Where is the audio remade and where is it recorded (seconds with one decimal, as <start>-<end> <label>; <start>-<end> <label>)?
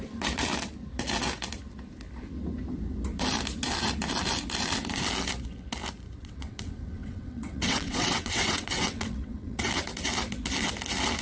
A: 0.0-6.2 recorded; 6.2-9.6 remade; 9.6-11.2 recorded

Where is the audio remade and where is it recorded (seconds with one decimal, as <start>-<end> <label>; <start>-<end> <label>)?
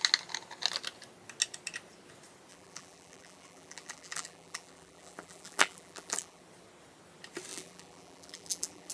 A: 0.0-2.5 recorded; 2.5-6.4 remade; 6.4-7.5 recorded; 7.5-8.9 remade